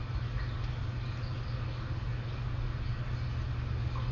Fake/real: real